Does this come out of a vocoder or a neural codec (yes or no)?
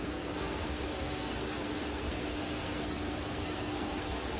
yes